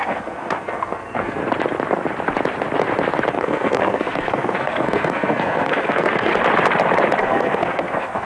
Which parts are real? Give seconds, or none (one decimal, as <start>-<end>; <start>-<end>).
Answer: 1.4-3.3; 6.3-7.2